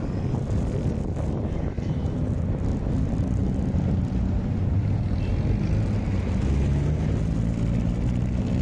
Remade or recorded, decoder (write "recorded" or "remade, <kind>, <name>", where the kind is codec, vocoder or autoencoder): recorded